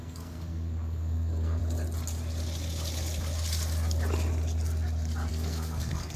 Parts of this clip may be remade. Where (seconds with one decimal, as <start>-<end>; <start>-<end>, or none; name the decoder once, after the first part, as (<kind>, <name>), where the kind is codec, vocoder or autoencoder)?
0.0-1.6 (codec, SNAC); 5.3-6.2